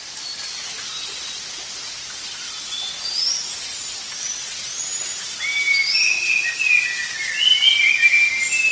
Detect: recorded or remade recorded